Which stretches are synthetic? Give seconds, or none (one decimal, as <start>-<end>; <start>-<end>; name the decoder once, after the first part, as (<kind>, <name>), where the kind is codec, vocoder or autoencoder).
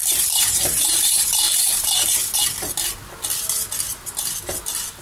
0.0-2.2 (vocoder, BigVGAN v2)